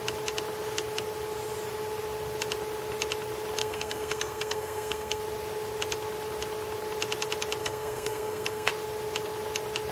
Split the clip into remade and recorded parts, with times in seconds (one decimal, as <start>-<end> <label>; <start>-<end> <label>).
0.0-3.6 recorded; 3.6-5.2 remade; 5.2-7.6 recorded; 7.6-8.7 remade; 8.7-9.9 recorded